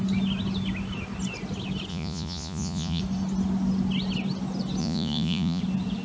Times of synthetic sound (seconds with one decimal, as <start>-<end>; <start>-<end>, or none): 1.9-3.0; 4.8-5.6